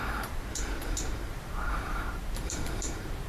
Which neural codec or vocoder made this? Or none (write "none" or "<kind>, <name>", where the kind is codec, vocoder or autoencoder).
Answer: vocoder, BigVGAN v2